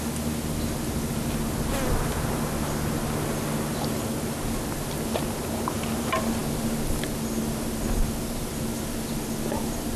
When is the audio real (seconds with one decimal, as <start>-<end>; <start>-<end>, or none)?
0.0-10.0